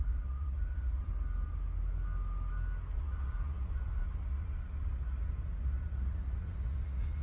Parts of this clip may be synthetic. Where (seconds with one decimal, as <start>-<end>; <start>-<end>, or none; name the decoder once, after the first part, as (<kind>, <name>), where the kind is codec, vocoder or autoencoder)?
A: 0.0-1.1 (vocoder, Vocos); 2.9-7.2